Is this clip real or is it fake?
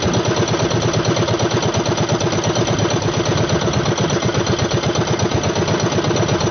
real